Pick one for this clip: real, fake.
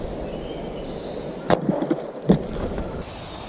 real